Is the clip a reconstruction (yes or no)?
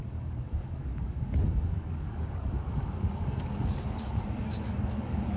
yes